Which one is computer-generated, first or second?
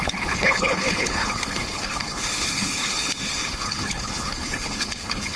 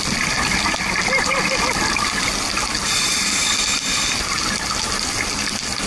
first